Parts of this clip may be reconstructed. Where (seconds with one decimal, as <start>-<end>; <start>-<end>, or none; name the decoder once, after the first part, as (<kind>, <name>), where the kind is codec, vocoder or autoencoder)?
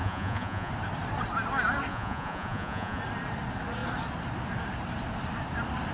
0.0-0.7 (vocoder, Vocos); 1.9-3.0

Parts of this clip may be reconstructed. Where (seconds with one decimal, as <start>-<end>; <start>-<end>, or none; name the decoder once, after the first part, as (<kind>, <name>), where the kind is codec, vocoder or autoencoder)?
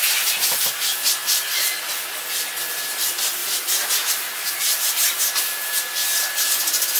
3.4-5.4 (vocoder, BigVGAN v2)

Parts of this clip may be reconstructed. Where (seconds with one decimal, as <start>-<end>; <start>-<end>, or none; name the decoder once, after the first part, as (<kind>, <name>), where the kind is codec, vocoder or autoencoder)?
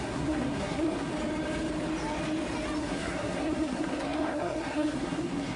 0.0-1.1 (codec, SNAC); 2.8-5.6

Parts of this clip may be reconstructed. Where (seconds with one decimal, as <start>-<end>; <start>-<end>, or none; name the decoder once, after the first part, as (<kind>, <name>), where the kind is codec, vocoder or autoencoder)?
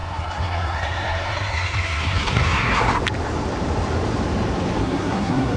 0.0-3.0 (codec, SNAC); 4.8-5.6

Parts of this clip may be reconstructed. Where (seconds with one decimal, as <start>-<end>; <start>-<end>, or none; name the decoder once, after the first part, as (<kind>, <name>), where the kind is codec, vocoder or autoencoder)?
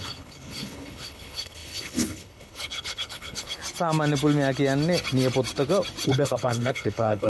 0.0-3.6 (codec, HILCodec); 6.1-7.3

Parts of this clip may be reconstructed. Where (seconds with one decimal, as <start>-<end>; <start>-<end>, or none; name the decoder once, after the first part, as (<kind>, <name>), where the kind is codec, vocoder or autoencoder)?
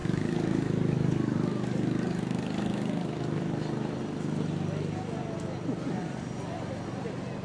0.0-3.4 (codec, DAC)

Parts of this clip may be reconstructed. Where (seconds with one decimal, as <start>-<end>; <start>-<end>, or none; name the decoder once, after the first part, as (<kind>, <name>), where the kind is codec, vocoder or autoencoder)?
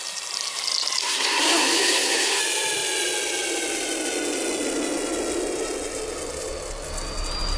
1.0-2.4 (codec, SNAC)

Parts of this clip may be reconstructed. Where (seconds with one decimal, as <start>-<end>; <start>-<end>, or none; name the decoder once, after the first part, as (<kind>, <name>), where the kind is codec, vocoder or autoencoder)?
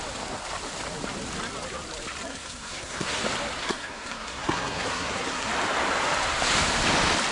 2.3-3.2 (codec, SNAC); 3.6-5.5